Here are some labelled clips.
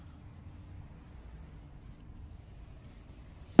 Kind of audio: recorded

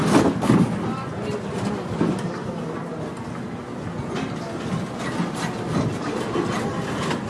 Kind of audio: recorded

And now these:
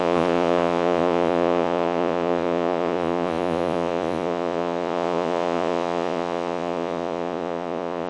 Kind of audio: remade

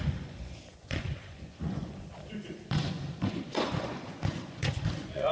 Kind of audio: remade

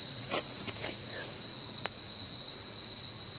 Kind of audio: remade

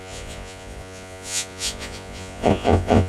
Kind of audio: remade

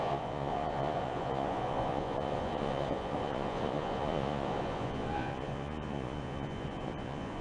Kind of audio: remade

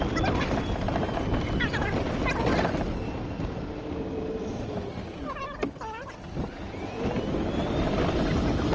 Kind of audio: recorded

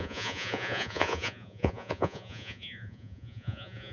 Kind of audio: remade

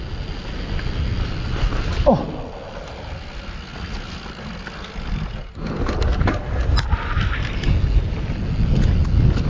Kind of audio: recorded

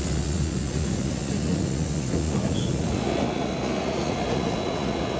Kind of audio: remade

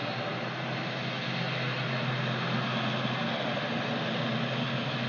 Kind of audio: recorded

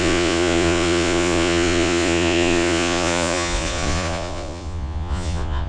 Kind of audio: remade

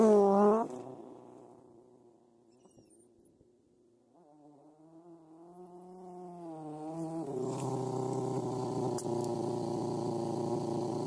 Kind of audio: recorded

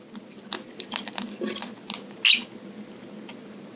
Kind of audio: recorded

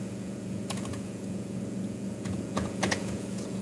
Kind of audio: remade